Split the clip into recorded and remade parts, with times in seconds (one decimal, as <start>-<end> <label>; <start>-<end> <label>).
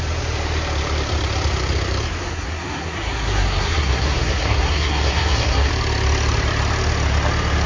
0.0-2.2 recorded; 2.2-5.7 remade; 5.7-7.7 recorded